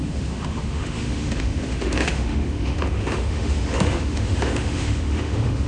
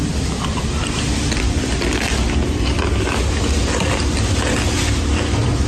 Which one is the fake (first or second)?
first